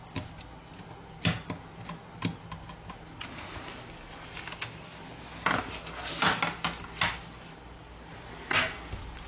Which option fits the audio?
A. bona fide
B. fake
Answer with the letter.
A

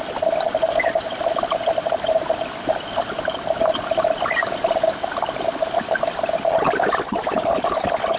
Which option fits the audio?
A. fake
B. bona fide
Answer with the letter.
A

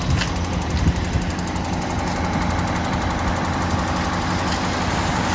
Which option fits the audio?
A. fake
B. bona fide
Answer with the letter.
B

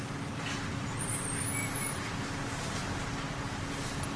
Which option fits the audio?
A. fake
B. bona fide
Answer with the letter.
B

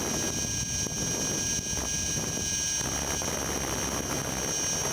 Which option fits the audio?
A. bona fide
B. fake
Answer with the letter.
A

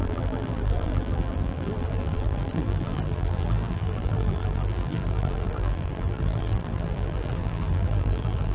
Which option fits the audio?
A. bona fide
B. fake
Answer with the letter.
B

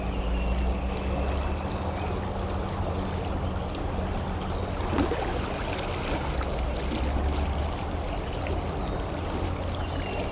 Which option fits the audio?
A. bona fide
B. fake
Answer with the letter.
A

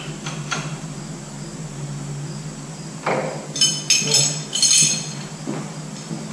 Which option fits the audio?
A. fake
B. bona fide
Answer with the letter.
B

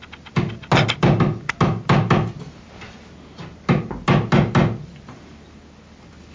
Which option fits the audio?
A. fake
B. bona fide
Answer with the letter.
B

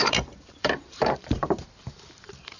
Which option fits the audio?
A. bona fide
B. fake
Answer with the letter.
B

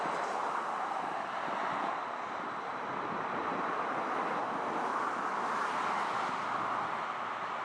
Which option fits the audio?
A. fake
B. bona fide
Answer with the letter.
B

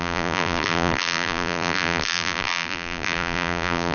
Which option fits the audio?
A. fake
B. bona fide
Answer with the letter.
A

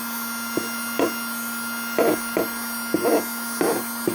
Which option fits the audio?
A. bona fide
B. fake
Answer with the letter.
A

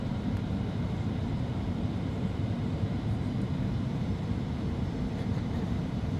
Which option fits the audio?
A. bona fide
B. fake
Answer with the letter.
B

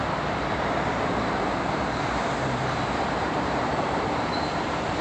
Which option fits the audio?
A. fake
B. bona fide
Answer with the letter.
A